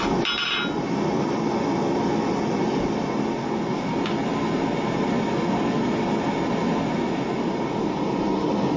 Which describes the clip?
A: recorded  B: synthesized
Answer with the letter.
A